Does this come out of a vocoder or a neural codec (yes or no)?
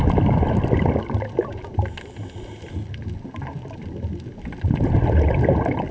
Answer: no